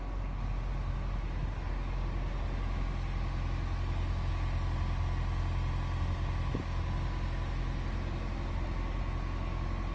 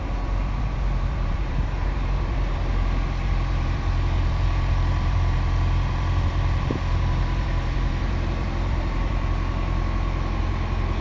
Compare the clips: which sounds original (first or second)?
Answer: first